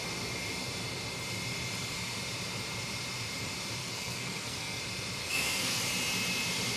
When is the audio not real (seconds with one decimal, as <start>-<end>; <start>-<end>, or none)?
3.8-4.8; 5.2-5.8